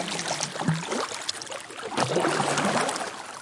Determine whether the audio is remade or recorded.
recorded